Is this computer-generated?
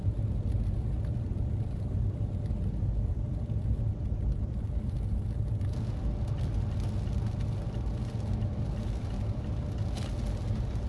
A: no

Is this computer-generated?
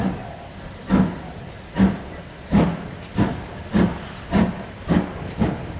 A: no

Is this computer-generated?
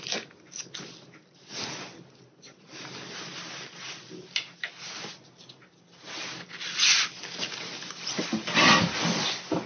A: no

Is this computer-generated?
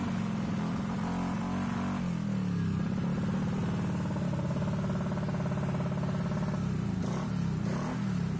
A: no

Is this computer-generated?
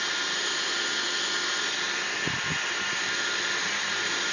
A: no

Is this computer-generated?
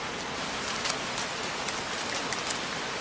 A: no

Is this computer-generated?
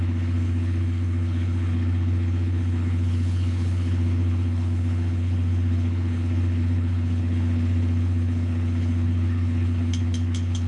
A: yes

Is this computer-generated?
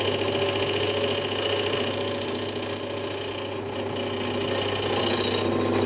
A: no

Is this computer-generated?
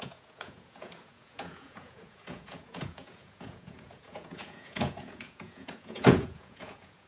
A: yes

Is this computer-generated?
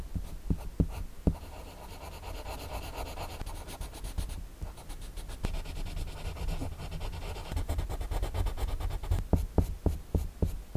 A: no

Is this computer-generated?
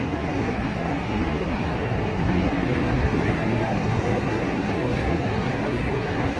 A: yes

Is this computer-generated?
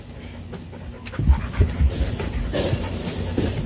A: no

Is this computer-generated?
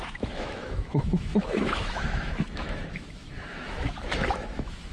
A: yes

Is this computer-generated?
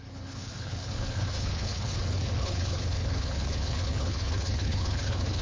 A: yes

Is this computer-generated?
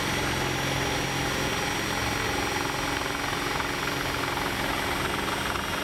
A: no